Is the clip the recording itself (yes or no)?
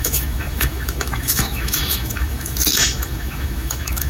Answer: no